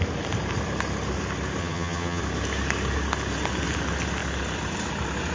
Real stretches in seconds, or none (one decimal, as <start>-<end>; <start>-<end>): 0.0-1.6; 2.2-5.3